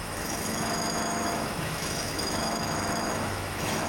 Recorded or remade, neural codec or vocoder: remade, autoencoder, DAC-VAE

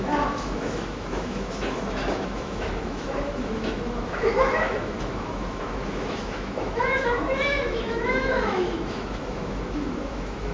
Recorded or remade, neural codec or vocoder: remade, autoencoder, DAC-VAE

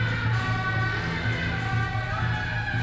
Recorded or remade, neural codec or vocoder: recorded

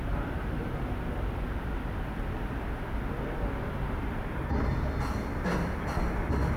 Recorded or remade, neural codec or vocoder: recorded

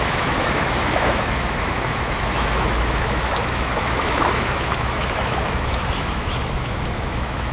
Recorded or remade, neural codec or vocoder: remade, autoencoder, DAC-VAE